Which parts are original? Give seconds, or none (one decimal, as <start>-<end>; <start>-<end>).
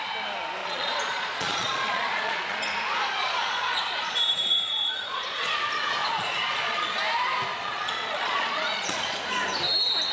0.0-0.6; 2.6-3.2; 5.6-6.0; 7.0-7.5; 9.2-10.1